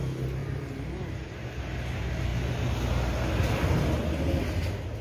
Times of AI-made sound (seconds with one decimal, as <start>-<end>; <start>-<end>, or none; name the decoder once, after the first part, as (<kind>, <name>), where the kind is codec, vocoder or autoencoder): 0.4-1.6 (vocoder, BigVGAN v2)